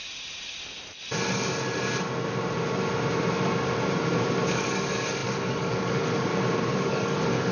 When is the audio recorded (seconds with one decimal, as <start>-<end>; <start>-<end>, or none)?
0.0-4.5; 6.3-6.9